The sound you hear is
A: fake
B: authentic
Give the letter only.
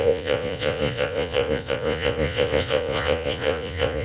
A